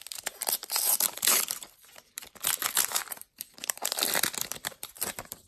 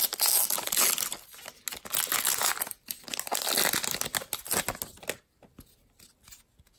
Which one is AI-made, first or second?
first